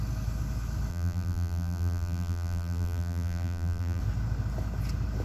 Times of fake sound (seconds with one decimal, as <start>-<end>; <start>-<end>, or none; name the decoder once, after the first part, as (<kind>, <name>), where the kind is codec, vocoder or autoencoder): 0.9-4.0 (vocoder, BigVGAN v2)